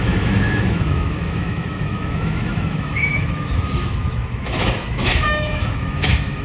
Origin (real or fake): fake